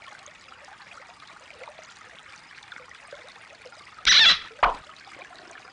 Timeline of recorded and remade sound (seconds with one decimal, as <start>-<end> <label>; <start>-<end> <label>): 0.0-5.7 recorded